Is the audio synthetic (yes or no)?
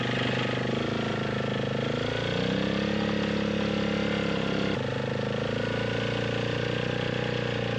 no